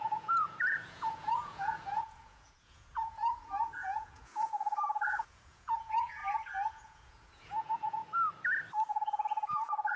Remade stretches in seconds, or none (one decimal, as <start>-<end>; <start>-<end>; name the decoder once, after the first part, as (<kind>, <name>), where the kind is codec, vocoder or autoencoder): 0.0-6.2 (vocoder, Vocos); 6.7-8.0; 8.9-10.0